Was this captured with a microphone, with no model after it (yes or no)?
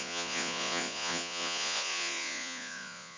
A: no